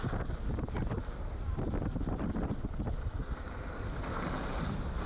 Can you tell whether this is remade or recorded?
recorded